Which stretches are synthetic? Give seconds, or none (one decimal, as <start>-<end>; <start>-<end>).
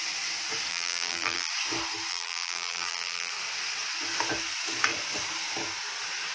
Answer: 0.7-1.5; 2.1-3.3